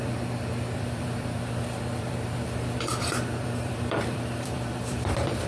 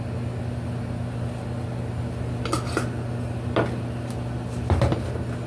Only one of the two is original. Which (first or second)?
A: second